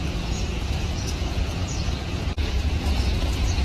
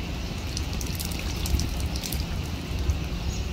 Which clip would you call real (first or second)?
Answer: second